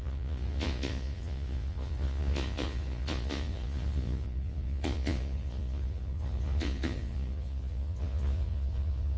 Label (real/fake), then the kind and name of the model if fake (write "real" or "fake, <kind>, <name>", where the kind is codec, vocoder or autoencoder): fake, vocoder, Vocos